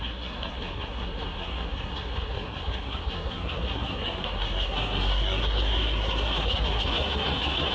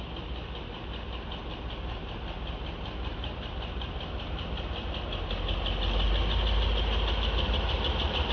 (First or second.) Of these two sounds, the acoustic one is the second